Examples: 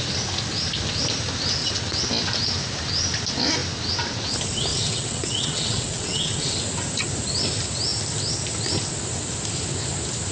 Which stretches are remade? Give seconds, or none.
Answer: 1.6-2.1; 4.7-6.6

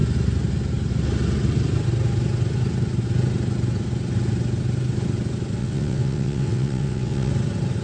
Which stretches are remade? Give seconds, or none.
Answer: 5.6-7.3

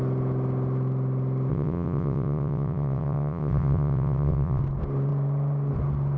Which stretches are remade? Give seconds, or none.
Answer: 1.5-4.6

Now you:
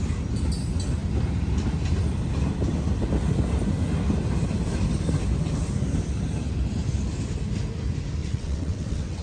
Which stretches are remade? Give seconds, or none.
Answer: 8.2-9.2